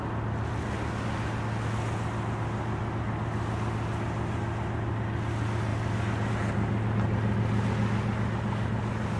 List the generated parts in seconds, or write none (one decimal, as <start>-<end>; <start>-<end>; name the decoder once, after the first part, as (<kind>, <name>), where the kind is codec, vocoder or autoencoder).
none